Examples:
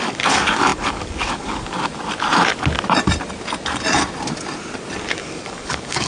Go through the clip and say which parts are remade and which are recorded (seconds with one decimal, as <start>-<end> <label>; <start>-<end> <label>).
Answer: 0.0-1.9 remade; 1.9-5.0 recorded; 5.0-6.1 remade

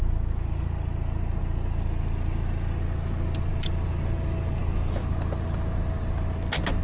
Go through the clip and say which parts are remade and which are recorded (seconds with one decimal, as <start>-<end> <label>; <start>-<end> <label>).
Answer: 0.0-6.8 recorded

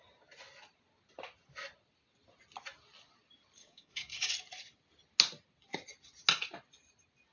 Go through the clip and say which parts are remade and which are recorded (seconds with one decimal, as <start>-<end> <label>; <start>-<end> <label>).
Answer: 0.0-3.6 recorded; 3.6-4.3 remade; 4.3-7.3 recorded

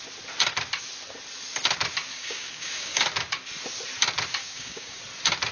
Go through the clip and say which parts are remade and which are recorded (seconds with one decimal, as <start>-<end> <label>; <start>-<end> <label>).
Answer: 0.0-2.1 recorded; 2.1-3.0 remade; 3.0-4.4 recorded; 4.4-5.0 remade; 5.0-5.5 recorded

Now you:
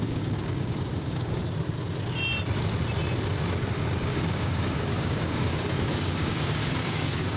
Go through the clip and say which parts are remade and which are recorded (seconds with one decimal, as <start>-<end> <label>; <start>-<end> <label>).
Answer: 0.0-1.4 remade; 1.4-4.0 recorded; 4.0-7.4 remade